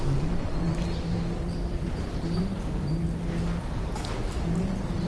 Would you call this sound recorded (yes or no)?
yes